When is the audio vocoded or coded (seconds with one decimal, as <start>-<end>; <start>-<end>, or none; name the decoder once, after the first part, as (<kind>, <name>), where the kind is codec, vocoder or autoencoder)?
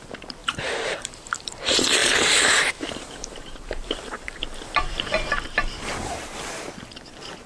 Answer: 0.4-1.6 (vocoder, BigVGAN v2); 2.0-6.5